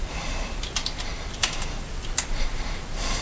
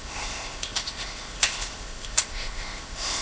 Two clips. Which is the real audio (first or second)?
first